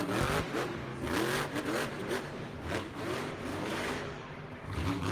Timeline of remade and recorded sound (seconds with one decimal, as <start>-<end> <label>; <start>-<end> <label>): 0.0-3.5 recorded; 3.5-5.1 remade